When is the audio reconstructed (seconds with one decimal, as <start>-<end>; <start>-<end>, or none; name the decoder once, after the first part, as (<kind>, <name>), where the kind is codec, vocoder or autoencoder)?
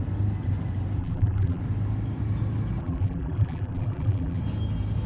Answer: 1.0-1.6 (vocoder, BigVGAN v2); 2.8-4.4